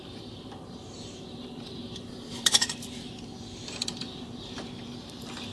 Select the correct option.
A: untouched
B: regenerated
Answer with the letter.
B